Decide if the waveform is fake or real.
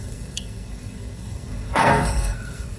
fake